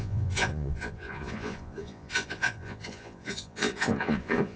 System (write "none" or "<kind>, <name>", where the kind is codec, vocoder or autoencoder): vocoder, Vocos